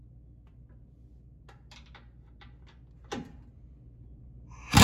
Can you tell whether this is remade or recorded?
recorded